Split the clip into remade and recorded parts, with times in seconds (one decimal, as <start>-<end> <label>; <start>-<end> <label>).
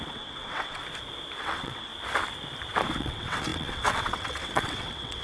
0.0-0.8 remade; 0.8-1.4 recorded; 1.4-1.9 remade; 1.9-3.0 recorded; 3.0-5.2 remade